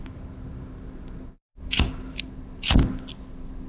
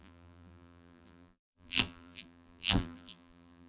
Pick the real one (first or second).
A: first